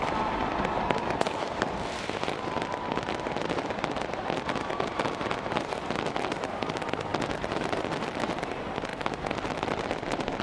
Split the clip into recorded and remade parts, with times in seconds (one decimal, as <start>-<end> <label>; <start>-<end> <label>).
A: 0.0-10.4 remade